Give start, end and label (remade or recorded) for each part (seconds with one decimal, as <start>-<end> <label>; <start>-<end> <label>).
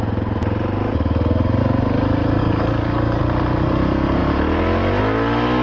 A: 0.0-2.4 recorded; 2.4-3.2 remade; 3.2-5.6 recorded